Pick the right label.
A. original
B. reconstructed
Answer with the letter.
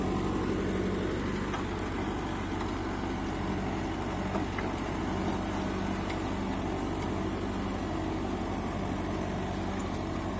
A